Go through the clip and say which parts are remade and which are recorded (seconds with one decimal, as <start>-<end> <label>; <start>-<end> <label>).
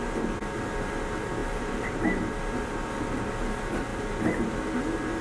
0.0-5.2 recorded